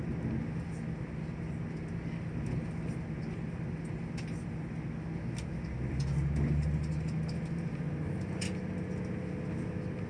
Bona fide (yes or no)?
yes